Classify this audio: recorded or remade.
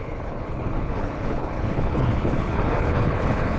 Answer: remade